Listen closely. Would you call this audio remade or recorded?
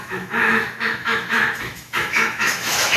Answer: remade